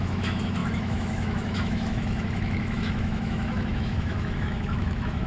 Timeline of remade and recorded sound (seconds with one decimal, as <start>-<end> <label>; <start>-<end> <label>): 0.0-5.3 remade